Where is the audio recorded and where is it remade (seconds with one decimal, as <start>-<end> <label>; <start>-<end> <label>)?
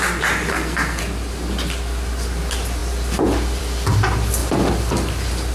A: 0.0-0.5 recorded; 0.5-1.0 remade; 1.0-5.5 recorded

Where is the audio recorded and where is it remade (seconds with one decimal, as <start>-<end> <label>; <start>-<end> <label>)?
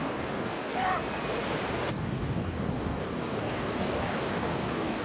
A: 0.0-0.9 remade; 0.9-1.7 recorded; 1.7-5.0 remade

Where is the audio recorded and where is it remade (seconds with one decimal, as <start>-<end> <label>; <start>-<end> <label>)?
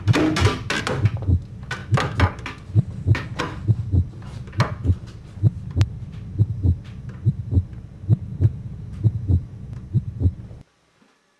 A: 0.0-11.4 recorded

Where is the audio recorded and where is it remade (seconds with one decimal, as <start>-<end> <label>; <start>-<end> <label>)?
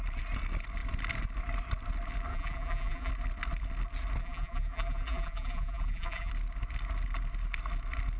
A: 0.0-2.3 recorded; 2.3-3.1 remade; 3.1-4.2 recorded; 4.2-6.3 remade; 6.3-8.2 recorded